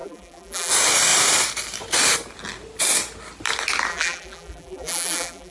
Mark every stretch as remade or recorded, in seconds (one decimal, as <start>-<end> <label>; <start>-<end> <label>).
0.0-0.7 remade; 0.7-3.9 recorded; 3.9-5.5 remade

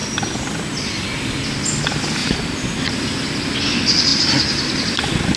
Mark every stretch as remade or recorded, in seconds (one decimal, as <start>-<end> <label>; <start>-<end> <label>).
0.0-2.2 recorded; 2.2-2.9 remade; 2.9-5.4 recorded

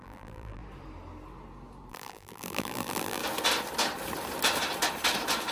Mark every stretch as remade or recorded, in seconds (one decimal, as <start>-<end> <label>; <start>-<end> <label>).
0.0-0.6 remade; 0.6-1.9 recorded; 1.9-3.2 remade; 3.2-5.5 recorded

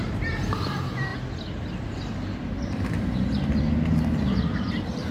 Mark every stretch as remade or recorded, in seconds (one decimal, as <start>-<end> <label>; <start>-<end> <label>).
0.0-1.1 remade; 1.1-4.2 recorded; 4.2-5.1 remade